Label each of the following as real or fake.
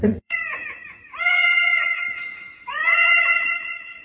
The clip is fake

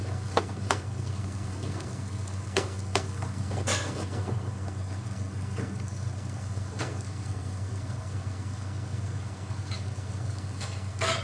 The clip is fake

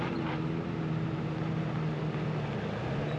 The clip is real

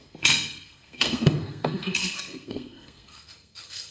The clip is fake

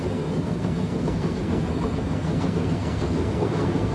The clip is fake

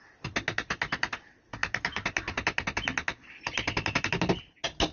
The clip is real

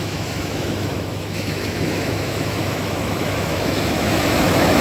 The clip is fake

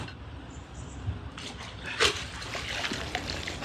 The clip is real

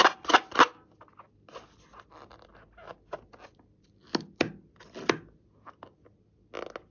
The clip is real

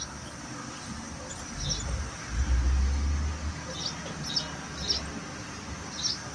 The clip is real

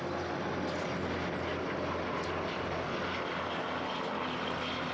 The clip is real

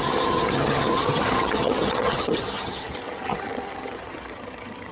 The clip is fake